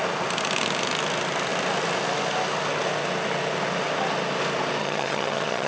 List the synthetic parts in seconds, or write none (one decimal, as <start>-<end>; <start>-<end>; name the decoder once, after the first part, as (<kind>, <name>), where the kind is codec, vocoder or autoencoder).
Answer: 4.8-5.7 (vocoder, HiFi-GAN)